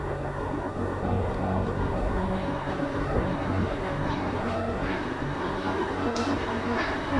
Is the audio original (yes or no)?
no